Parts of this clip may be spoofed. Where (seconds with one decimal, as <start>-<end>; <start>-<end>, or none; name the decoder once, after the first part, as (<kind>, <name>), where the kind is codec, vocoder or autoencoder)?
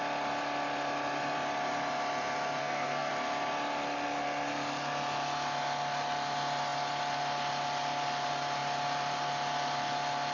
2.6-3.1 (codec, SNAC)